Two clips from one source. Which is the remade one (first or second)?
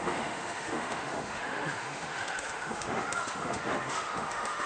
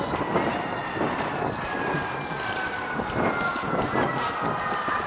first